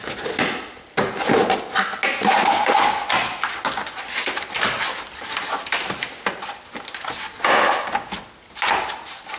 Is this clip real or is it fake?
real